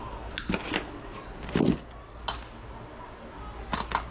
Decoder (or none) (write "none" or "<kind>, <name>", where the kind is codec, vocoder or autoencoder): none